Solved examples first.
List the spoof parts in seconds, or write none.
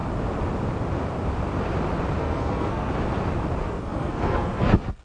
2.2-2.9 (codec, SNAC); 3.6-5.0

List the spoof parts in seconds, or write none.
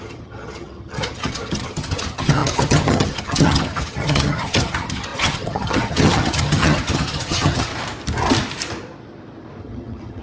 0.0-7.7 (vocoder, HiFi-GAN); 9.6-10.2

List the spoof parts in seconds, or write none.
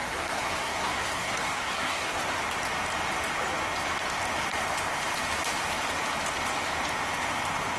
0.0-2.2 (codec, SNAC)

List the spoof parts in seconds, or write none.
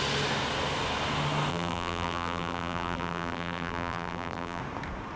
1.5-4.6 (vocoder, BigVGAN v2)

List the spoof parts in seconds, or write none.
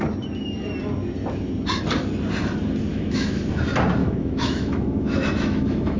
2.9-3.4 (autoencoder, DAC-VAE); 4.0-6.0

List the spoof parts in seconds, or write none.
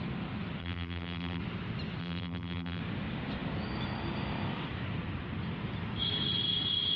0.6-1.4 (vocoder, BigVGAN v2); 2.0-2.8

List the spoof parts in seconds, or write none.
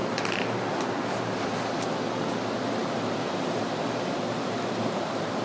0.0-1.0 (vocoder, BigVGAN v2); 2.8-5.4